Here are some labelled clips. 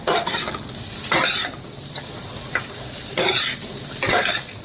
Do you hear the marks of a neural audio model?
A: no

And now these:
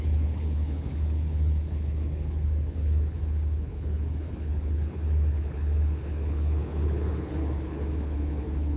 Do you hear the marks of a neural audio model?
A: yes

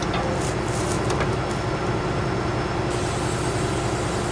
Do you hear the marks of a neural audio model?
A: no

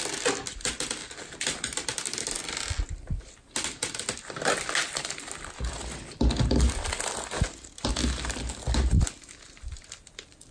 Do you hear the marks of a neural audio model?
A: no